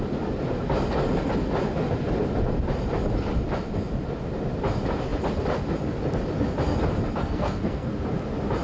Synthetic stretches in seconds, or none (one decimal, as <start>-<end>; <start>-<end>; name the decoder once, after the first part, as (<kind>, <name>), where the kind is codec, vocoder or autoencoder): 7.2-7.9 (codec, SNAC)